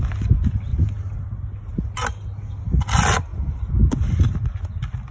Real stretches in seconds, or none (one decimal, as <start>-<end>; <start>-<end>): 0.0-5.1